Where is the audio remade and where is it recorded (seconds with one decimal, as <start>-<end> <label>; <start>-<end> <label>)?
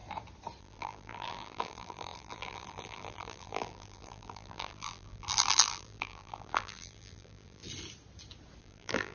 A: 0.0-0.6 recorded; 0.6-7.6 remade; 7.6-8.6 recorded; 8.6-9.1 remade